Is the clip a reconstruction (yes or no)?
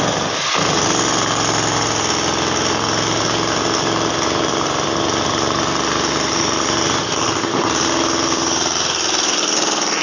no